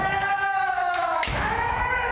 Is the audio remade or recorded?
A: remade